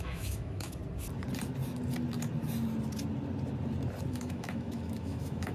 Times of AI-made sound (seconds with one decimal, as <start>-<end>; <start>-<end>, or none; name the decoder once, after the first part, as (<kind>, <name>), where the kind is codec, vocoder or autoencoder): 0.0-0.8 (autoencoder, DAC-VAE); 4.1-5.5